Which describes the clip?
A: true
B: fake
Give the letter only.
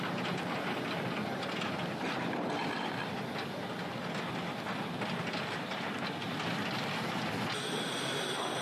A